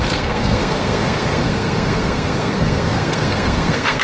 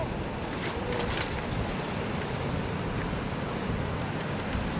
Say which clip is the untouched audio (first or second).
second